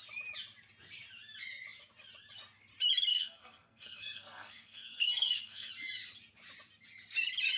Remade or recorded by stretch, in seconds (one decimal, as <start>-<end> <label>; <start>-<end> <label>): 0.0-3.1 recorded; 3.1-5.7 remade; 5.7-7.6 recorded

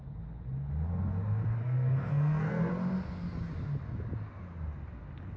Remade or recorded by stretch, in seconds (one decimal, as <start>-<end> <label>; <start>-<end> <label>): 0.0-1.6 recorded; 1.6-2.7 remade; 2.7-5.4 recorded